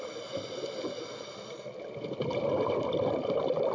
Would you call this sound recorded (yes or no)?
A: yes